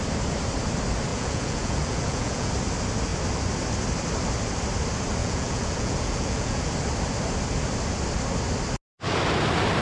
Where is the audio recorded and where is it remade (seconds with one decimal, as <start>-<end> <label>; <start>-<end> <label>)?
0.0-1.1 recorded; 1.1-2.5 remade; 2.5-5.2 recorded; 5.2-6.7 remade; 6.7-9.8 recorded